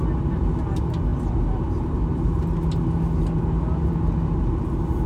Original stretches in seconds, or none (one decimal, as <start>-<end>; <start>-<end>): 0.0-5.1